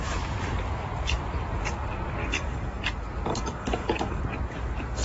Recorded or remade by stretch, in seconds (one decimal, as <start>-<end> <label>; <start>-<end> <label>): 0.0-2.2 recorded; 2.2-2.8 remade; 2.8-3.3 recorded; 3.3-4.2 remade; 4.2-5.0 recorded